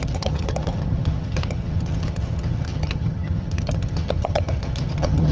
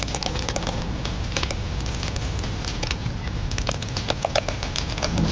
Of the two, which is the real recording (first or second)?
second